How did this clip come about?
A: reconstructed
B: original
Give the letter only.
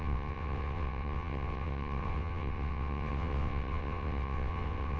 A